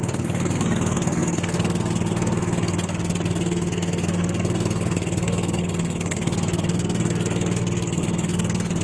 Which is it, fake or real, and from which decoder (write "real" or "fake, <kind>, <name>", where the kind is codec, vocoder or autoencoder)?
fake, codec, SNAC